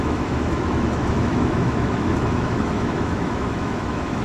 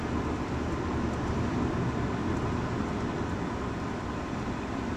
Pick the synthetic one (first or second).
first